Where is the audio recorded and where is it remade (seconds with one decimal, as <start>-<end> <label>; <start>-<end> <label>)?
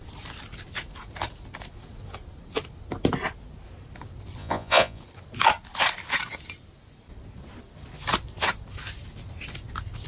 0.0-4.4 recorded; 4.4-5.0 remade; 5.0-10.1 recorded